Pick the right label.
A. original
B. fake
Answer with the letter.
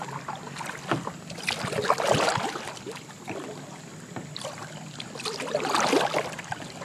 A